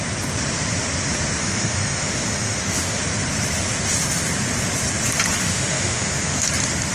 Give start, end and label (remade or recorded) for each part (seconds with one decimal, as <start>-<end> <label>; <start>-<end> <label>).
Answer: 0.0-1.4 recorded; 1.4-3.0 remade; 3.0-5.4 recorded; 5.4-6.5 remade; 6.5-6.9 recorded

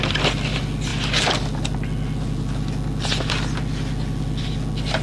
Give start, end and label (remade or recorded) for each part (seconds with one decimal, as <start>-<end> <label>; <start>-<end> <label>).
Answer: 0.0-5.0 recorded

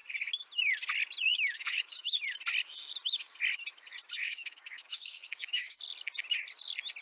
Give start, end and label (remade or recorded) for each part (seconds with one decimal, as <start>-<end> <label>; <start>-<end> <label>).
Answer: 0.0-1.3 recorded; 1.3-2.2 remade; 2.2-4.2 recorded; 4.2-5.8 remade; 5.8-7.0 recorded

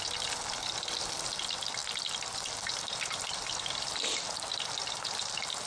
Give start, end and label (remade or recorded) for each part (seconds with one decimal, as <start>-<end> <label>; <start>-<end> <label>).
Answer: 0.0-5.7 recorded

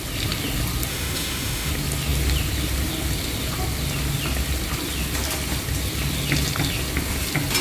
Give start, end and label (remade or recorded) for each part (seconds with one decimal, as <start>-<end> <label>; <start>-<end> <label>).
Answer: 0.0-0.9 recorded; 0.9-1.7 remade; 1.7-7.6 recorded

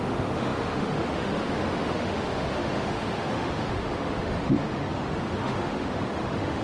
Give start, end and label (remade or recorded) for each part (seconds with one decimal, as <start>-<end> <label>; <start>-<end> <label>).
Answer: 0.0-6.6 remade